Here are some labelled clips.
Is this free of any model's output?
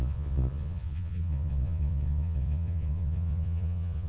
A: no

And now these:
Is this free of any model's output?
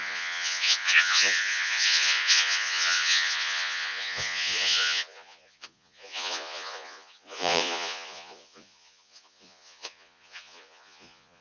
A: no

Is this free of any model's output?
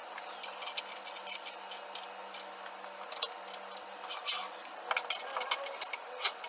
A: yes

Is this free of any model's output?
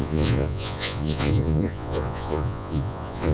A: no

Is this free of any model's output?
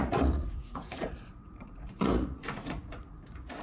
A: no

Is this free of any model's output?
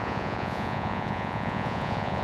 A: no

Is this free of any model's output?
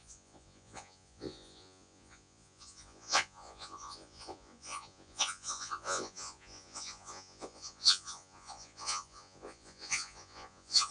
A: no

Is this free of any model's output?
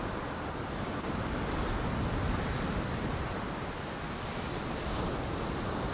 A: yes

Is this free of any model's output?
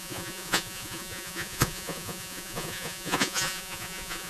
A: no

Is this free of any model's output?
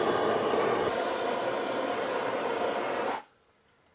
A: yes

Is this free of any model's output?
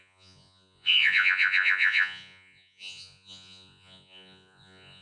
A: no